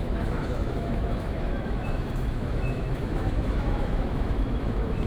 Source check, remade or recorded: remade